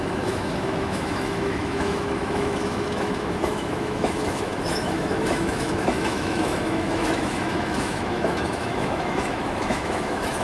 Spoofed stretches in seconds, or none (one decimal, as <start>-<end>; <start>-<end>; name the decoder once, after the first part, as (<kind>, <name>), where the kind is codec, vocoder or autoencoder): 0.0-10.4 (autoencoder, DAC-VAE)